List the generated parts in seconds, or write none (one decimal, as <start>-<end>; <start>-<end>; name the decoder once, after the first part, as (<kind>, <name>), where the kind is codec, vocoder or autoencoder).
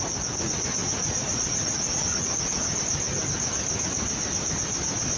0.8-2.8 (vocoder, Vocos)